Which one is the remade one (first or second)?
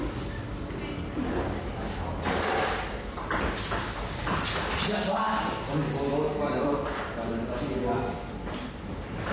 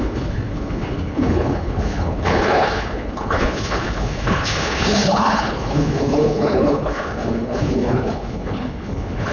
second